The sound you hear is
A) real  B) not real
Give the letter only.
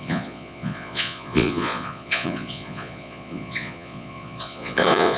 B